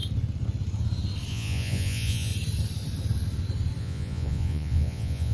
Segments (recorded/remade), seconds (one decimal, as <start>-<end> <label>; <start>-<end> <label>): 0.0-1.3 recorded; 1.3-2.3 remade; 2.3-3.8 recorded; 3.8-5.3 remade